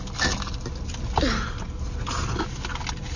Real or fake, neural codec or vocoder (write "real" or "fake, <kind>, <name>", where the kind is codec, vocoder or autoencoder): real